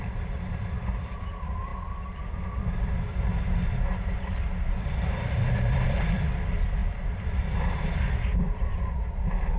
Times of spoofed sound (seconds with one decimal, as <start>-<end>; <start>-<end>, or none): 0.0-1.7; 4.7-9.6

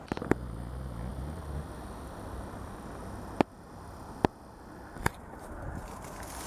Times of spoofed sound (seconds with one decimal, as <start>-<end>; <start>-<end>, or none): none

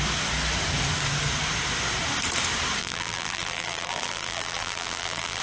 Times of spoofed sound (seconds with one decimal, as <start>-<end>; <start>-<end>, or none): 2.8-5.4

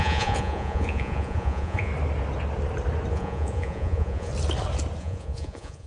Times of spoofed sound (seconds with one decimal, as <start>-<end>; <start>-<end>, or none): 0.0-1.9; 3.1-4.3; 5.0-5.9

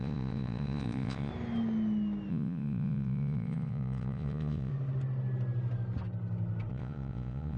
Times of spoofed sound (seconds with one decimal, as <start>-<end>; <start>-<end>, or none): 0.0-1.3; 2.3-4.7; 6.7-7.6

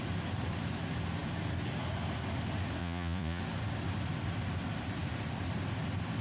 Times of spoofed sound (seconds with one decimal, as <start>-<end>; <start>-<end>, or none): 2.8-3.4

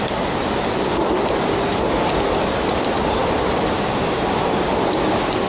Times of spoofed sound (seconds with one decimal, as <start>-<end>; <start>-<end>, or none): none